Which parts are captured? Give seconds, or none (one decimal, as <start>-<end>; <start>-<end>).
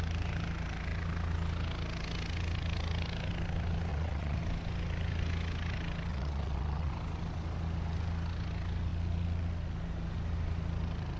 0.0-3.9; 4.4-6.1; 6.9-11.2